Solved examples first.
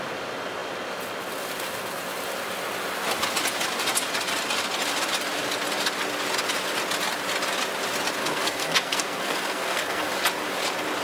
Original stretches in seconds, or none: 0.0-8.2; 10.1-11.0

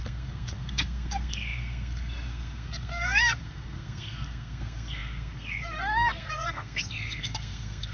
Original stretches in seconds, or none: none

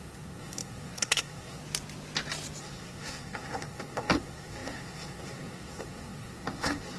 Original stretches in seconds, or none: 1.6-2.6

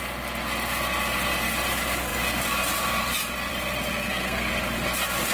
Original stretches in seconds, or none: 0.0-3.9; 4.5-5.3

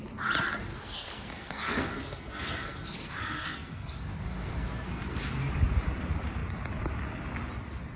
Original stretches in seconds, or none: 0.0-0.7; 5.5-8.0

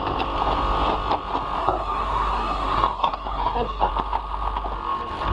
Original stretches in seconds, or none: 0.0-1.6; 3.9-5.3

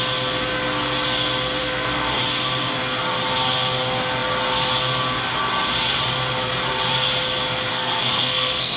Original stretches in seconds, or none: 0.0-1.6; 2.2-7.7